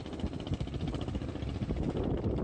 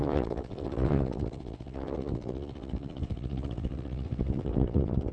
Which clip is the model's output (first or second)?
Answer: second